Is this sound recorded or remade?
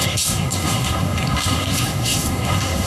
remade